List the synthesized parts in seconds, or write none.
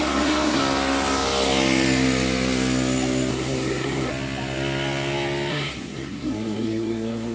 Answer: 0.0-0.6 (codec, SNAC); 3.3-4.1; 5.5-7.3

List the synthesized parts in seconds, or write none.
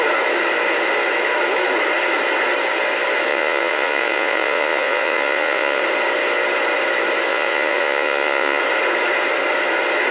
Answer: 3.3-5.8 (vocoder, Vocos); 7.3-8.6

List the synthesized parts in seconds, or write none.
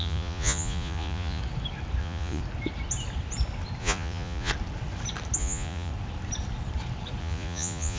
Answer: 0.0-1.4 (vocoder, Vocos); 2.0-2.4; 3.8-4.5; 5.4-5.9; 7.2-8.0